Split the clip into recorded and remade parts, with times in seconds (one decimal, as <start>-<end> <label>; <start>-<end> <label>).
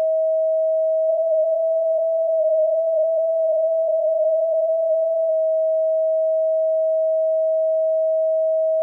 0.0-1.1 recorded; 1.1-5.3 remade; 5.3-8.8 recorded